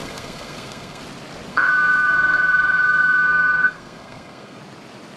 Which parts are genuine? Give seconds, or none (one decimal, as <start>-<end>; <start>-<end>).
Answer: 1.0-1.5; 4.6-5.2